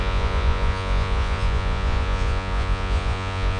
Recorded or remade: remade